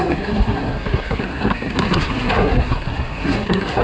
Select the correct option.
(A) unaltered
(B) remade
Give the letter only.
B